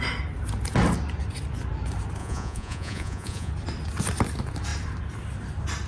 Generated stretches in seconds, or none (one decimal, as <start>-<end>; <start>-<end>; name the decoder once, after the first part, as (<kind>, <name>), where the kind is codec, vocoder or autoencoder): 2.2-3.5 (vocoder, Vocos)